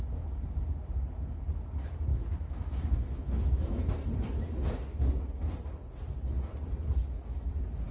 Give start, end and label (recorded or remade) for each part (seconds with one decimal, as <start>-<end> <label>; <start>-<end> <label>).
0.0-2.1 recorded; 2.1-3.9 remade; 3.9-7.0 recorded; 7.0-7.5 remade; 7.5-7.9 recorded